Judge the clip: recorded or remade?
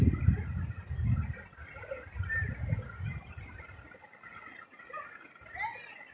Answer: recorded